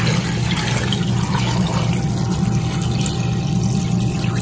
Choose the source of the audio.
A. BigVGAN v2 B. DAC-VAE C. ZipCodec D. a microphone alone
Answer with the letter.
D